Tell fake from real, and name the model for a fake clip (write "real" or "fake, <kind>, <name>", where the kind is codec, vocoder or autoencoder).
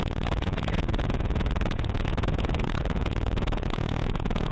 fake, vocoder, Vocos